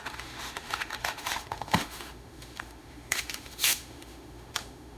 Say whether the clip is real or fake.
fake